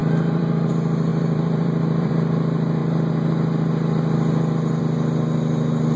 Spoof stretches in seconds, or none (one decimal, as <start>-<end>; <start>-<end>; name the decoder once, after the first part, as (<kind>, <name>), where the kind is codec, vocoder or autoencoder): 0.0-0.7 (vocoder, BigVGAN v2); 1.1-2.1